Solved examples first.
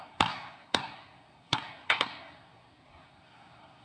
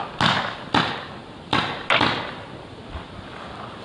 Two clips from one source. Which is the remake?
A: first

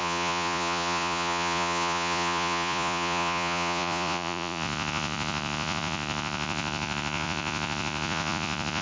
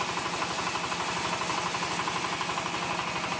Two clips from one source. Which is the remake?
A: first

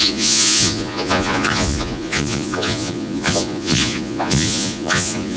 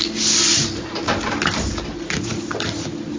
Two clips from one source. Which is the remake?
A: first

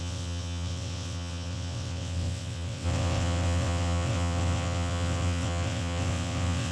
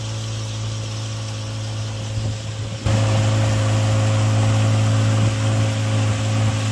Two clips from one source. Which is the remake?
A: first